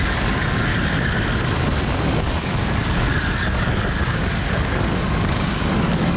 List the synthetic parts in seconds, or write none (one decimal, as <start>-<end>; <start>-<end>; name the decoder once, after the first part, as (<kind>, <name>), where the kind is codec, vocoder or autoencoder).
0.0-0.7 (codec, DAC); 1.9-6.2